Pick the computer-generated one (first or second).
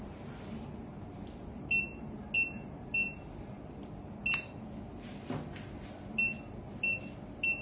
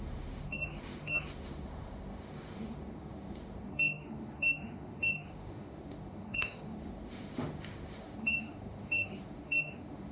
second